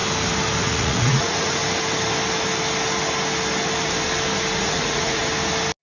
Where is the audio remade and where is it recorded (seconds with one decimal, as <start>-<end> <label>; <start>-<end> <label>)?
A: 0.0-0.6 recorded; 0.6-1.6 remade; 1.6-4.6 recorded; 4.6-5.2 remade; 5.2-5.8 recorded